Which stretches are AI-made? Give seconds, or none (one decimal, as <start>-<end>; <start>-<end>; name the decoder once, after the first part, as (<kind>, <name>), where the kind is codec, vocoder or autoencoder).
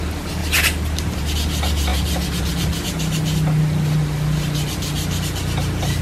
0.4-1.2 (vocoder, BigVGAN v2); 1.9-2.4